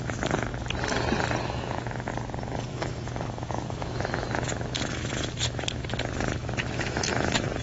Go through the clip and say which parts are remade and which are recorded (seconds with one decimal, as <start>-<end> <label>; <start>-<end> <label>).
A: 0.0-0.5 remade; 0.5-1.4 recorded; 1.4-2.1 remade; 2.1-2.7 recorded; 2.7-7.6 remade